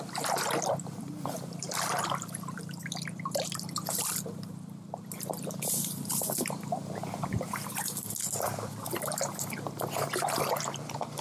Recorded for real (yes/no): no